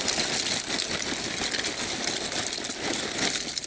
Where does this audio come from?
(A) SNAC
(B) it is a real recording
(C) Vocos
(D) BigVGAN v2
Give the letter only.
B